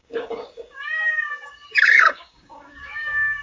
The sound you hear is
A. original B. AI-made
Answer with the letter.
B